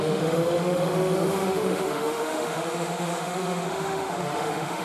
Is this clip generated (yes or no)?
yes